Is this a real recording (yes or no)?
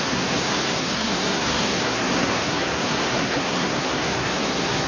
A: no